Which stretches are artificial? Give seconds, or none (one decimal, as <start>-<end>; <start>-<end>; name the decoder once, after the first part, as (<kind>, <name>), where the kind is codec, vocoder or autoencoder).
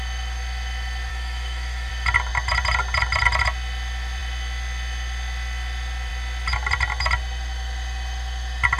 1.1-1.9 (autoencoder, DAC-VAE)